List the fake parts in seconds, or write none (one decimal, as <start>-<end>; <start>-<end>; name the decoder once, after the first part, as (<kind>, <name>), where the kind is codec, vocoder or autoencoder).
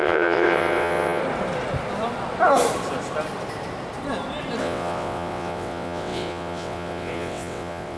0.0-1.2 (vocoder, WaveNeXt); 4.6-8.0